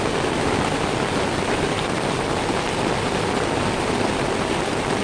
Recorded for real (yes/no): yes